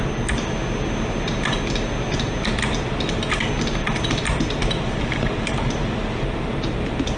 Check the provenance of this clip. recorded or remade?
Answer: recorded